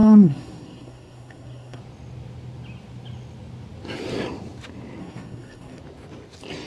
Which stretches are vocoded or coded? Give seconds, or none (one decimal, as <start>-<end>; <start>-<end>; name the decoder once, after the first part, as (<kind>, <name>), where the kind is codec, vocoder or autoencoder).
0.0-1.8 (codec, SNAC); 5.0-5.8